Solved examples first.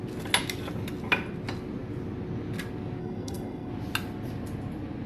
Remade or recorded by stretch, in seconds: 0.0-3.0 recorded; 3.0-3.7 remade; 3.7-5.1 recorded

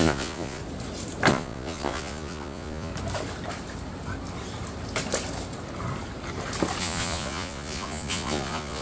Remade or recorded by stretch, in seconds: 0.0-0.6 remade; 0.6-1.3 recorded; 1.3-2.9 remade; 2.9-6.8 recorded; 6.8-8.8 remade